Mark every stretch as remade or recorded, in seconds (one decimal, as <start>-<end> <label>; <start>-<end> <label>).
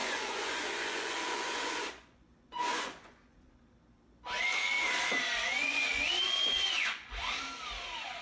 0.0-3.5 remade; 3.5-5.5 recorded; 5.5-7.2 remade; 7.2-8.2 recorded